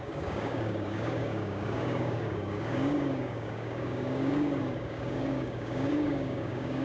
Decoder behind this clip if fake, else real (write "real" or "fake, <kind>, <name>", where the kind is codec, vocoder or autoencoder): fake, codec, DAC